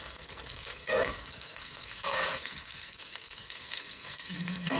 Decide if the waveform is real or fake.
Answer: fake